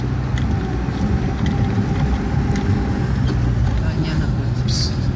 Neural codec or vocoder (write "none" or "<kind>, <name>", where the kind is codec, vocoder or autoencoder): none